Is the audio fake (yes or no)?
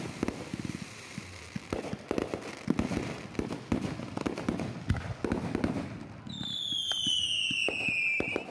no